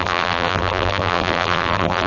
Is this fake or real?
fake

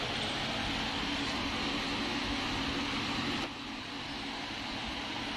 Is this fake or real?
real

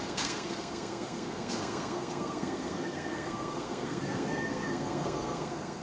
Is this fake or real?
fake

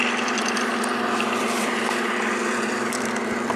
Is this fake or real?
fake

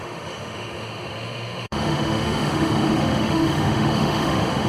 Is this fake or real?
fake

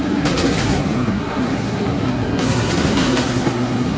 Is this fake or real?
fake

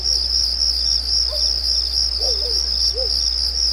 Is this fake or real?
real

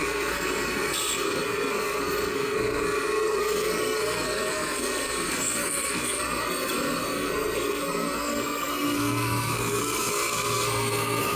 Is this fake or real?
fake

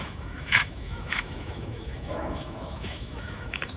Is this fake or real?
fake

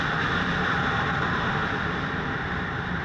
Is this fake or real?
real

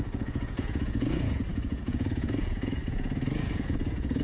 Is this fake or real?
fake